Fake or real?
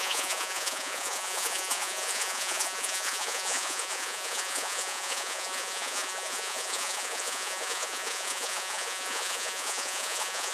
fake